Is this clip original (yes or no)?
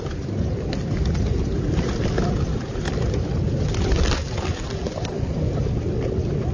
yes